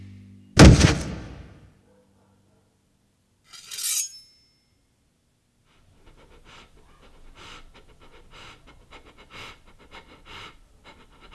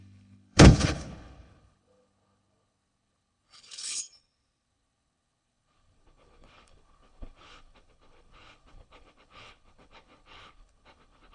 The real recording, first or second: first